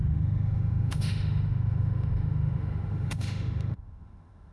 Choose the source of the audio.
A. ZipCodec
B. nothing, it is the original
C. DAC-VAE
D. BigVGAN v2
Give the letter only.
C